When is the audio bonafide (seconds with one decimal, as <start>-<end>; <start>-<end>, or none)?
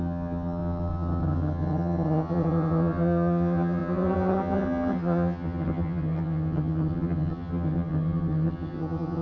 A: none